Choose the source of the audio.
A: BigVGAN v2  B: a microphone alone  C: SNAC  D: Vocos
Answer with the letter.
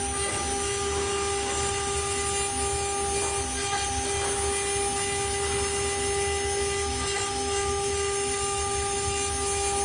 B